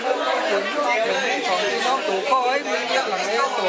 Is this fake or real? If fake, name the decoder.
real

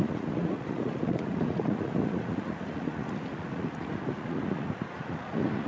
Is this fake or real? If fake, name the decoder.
fake, vocoder, Vocos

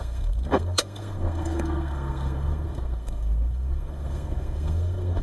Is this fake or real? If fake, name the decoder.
fake, codec, SNAC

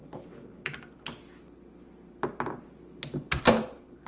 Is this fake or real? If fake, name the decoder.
real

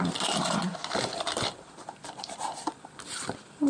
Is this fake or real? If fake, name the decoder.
fake, vocoder, BigVGAN v2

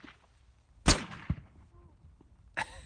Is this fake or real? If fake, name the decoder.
real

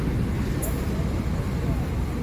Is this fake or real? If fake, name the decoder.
real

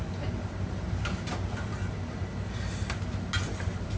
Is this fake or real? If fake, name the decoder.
real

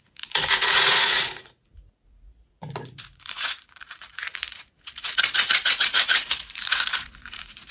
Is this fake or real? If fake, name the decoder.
fake, vocoder, Vocos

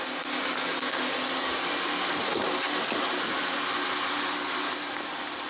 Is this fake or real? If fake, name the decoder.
real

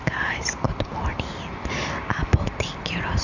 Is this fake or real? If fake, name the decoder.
real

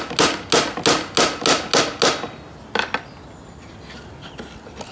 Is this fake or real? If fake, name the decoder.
real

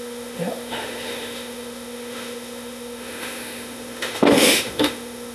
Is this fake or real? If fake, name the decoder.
fake, autoencoder, DAC-VAE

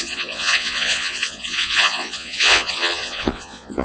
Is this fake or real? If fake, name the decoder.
fake, vocoder, Vocos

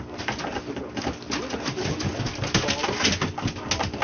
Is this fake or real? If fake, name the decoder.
real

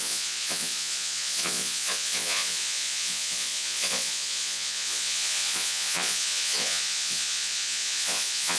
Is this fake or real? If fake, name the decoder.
fake, vocoder, Vocos